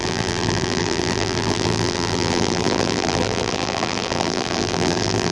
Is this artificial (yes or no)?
yes